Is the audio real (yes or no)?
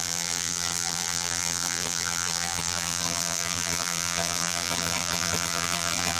no